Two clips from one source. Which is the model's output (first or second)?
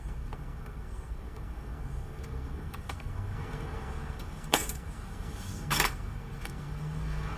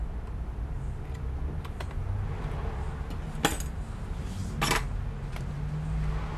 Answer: first